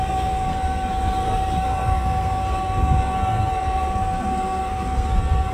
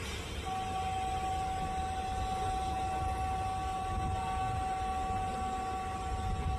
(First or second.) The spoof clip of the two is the first